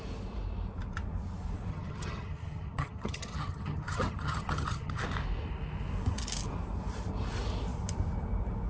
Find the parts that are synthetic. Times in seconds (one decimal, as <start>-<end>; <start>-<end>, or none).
1.7-5.0